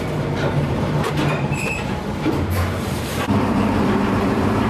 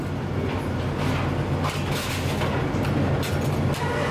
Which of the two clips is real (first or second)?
second